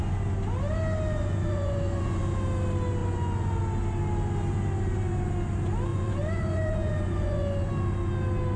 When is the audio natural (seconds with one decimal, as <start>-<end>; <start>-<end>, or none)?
0.0-1.2; 2.2-3.0; 3.6-5.9; 7.7-8.6